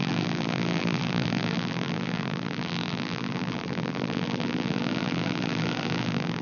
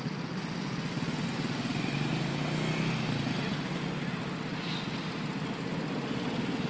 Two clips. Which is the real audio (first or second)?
second